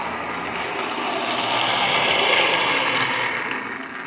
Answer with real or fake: real